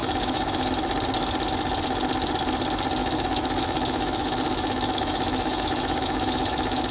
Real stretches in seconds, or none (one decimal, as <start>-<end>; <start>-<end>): 0.7-3.0